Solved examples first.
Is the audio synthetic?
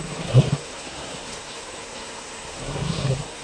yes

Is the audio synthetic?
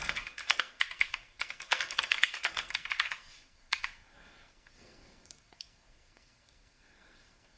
yes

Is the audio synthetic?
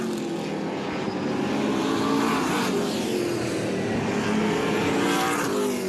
no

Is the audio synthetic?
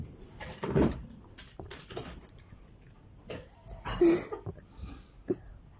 no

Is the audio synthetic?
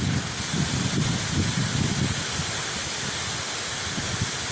no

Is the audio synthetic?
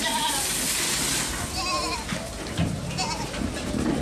no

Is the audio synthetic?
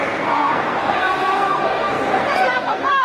yes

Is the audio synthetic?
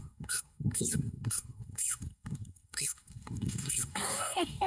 yes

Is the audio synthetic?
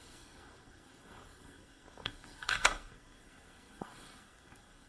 yes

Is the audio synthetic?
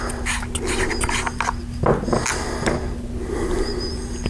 no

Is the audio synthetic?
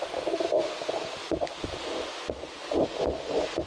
no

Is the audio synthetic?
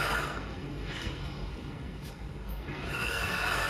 yes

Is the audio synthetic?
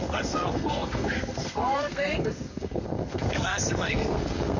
yes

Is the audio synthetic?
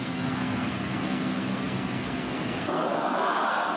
yes